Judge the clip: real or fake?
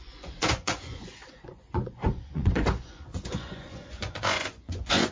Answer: fake